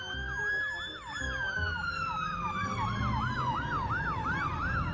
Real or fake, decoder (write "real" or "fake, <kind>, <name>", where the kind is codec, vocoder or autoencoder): real